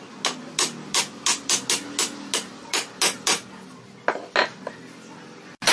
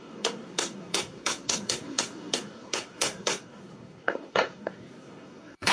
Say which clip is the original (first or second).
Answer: first